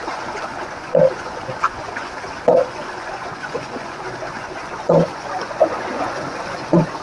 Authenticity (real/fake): fake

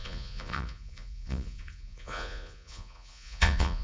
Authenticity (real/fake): fake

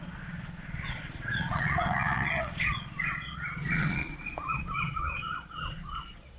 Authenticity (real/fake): fake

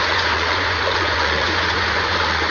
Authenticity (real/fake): fake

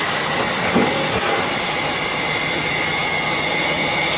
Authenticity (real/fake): real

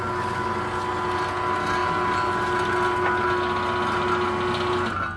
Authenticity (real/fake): real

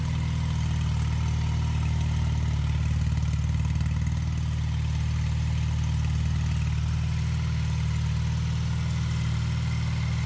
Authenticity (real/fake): real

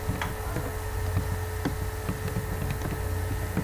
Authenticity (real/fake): real